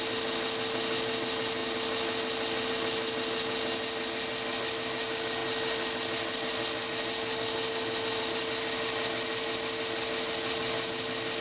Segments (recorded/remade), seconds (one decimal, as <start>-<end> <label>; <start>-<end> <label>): 0.0-11.4 recorded